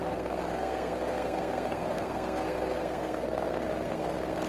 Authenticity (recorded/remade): remade